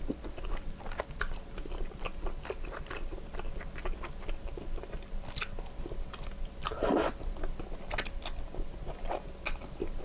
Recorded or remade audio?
recorded